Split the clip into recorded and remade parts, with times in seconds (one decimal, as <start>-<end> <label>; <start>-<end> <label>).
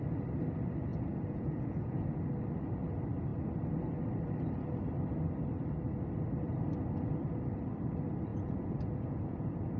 0.0-0.9 recorded; 0.9-2.1 remade; 2.1-8.3 recorded; 8.3-9.8 remade